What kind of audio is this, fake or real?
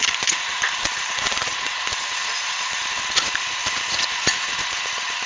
fake